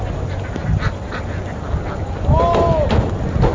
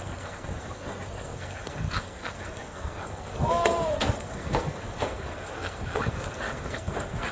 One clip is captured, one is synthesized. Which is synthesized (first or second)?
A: second